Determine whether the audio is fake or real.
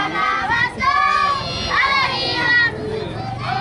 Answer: real